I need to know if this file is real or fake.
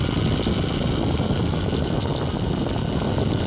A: real